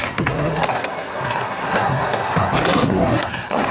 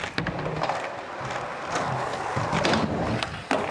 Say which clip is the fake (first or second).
first